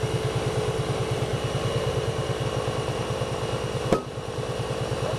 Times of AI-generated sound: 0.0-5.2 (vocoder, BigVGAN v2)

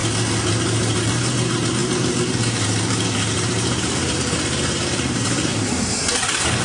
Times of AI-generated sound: 0.5-6.6 (vocoder, BigVGAN v2)

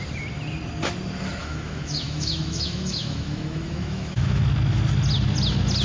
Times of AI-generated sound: 1.4-4.4 (autoencoder, DAC-VAE)

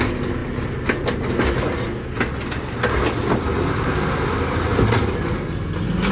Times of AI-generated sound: none

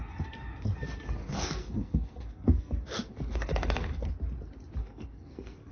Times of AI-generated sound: 1.2-4.1 (codec, SNAC); 4.8-5.7

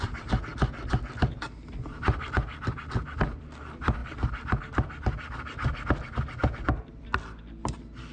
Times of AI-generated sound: none

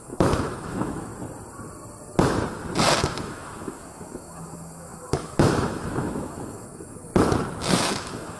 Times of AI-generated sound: 0.0-1.1 (autoencoder, DAC-VAE); 3.0-7.1; 7.7-8.4

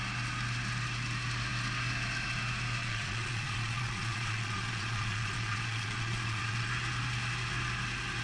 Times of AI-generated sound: 2.8-6.7 (vocoder, Vocos)